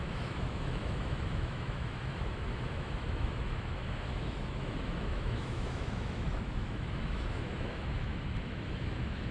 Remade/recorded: remade